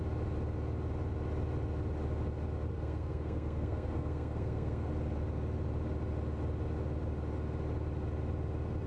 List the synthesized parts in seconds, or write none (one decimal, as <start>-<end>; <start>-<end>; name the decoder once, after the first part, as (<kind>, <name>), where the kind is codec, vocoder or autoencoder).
2.7-4.9 (codec, SNAC)